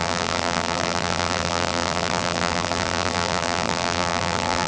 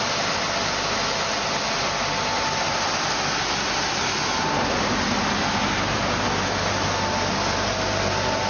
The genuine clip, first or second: second